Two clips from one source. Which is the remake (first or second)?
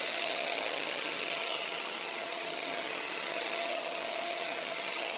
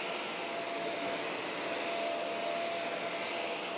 first